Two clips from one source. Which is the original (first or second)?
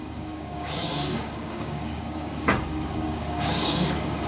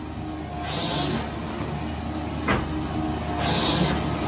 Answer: second